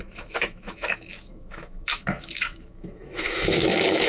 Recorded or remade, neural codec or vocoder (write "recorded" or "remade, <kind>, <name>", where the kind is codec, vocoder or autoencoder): remade, autoencoder, DAC-VAE